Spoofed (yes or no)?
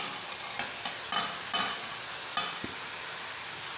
no